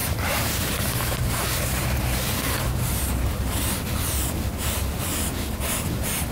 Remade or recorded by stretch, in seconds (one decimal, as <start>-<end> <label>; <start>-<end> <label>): 0.0-3.5 remade; 3.5-6.3 recorded